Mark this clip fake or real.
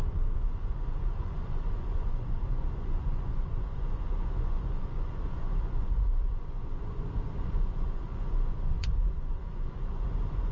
fake